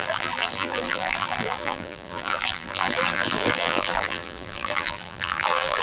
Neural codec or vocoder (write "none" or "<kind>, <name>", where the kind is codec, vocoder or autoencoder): vocoder, BigVGAN v2